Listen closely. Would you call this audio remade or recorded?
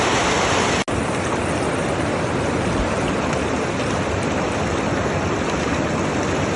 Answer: recorded